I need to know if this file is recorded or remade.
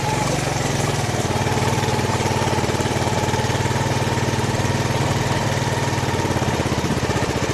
remade